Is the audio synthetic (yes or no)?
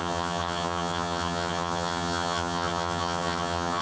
yes